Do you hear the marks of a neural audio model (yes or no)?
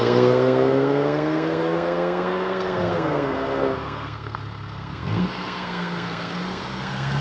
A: yes